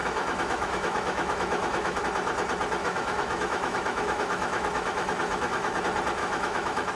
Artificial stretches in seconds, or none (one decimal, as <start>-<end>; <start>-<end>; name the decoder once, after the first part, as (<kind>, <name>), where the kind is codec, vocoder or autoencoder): 0.0-2.0 (autoencoder, DAC-VAE); 2.8-5.8; 6.2-6.9

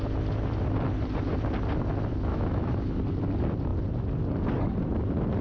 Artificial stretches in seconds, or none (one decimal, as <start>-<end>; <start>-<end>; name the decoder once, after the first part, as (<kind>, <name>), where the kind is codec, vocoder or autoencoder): 2.3-3.0 (autoencoder, DAC-VAE)

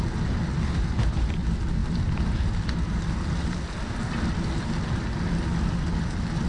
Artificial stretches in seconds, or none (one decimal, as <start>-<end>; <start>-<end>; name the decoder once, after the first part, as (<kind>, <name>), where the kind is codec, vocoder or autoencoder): none

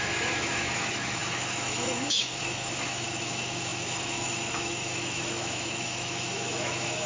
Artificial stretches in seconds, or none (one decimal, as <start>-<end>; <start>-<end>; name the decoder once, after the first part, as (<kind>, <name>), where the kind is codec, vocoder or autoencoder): 0.0-7.1 (autoencoder, DAC-VAE)

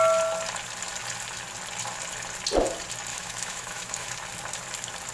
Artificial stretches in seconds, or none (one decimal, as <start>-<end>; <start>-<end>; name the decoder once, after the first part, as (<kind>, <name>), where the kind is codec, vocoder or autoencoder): 3.1-4.1 (autoencoder, DAC-VAE)